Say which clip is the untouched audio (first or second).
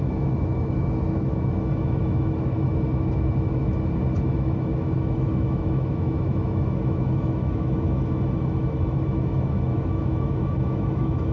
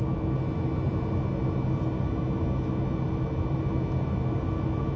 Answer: second